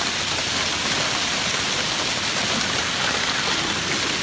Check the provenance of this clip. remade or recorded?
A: recorded